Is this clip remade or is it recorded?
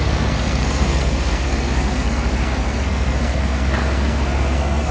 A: remade